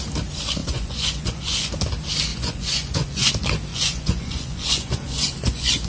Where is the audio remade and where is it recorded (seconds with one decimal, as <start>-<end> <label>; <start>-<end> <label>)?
0.0-0.6 recorded; 0.6-1.7 remade; 1.7-2.3 recorded; 2.3-3.3 remade; 3.3-3.7 recorded; 3.7-5.9 remade